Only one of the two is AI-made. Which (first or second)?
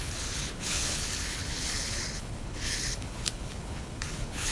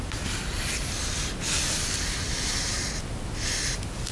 first